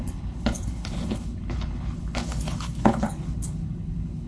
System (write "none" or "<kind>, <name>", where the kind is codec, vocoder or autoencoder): codec, HILCodec